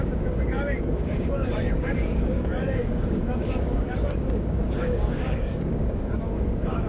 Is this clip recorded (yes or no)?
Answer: no